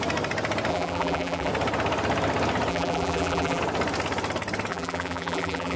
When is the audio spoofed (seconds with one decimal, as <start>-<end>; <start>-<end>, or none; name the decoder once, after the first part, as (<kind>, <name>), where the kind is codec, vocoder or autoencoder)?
0.7-1.5 (vocoder, BigVGAN v2); 2.7-3.6; 4.7-5.8